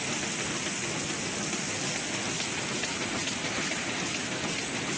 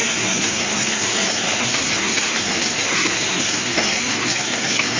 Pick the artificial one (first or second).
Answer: second